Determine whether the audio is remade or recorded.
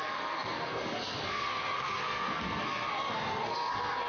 remade